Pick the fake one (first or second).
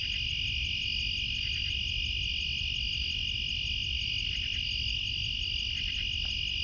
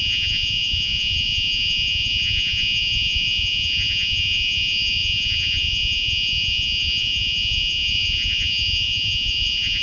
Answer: second